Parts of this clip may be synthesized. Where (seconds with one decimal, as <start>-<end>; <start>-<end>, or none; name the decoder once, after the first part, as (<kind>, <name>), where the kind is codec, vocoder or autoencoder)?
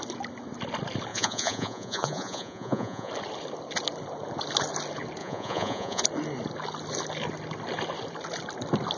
1.1-3.1 (vocoder, Vocos); 5.2-6.0